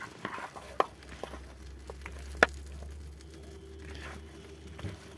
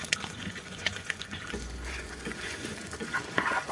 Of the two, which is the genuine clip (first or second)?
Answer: first